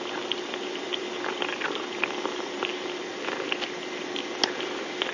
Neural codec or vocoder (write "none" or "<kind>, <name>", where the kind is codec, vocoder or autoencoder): none